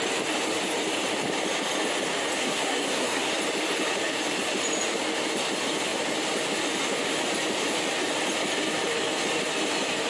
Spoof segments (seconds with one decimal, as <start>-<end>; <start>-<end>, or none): 2.4-3.3